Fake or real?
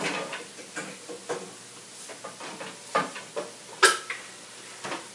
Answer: real